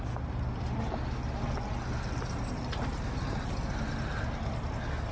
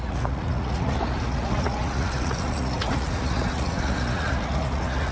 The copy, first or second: second